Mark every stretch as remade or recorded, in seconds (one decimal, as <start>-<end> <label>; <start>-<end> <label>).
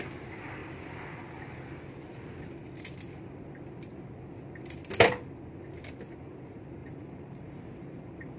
0.0-6.8 recorded; 6.8-8.4 remade